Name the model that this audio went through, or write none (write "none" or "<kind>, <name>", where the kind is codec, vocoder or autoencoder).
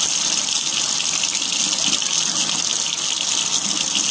none